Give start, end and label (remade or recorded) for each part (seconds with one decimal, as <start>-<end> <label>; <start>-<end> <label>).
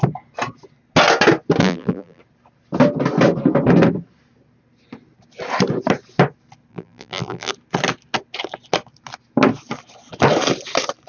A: 0.0-1.6 recorded; 1.6-2.2 remade; 2.2-6.7 recorded; 6.7-7.5 remade; 7.5-11.1 recorded